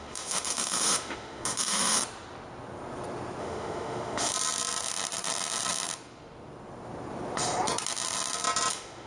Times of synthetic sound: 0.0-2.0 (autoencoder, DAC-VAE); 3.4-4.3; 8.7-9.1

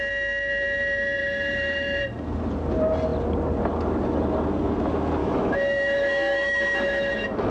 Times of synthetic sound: 1.2-2.0 (autoencoder, DAC-VAE); 5.2-7.5

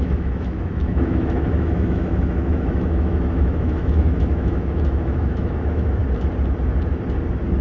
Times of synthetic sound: 0.0-6.0 (autoencoder, DAC-VAE)

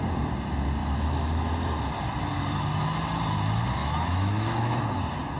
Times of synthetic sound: 0.8-1.5 (autoencoder, DAC-VAE); 3.8-4.8